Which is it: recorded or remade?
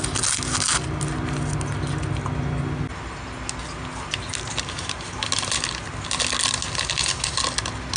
recorded